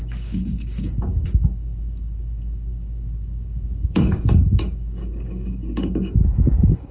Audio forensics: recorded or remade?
remade